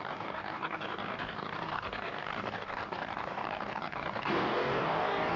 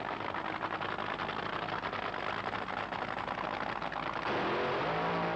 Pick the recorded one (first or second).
second